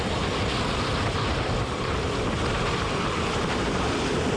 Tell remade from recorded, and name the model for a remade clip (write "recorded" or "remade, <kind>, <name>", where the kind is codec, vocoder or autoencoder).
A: recorded